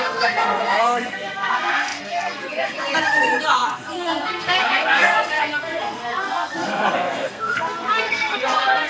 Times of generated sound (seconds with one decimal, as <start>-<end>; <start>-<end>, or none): 0.0-8.9